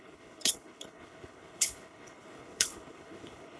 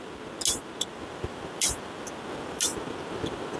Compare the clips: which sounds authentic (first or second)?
second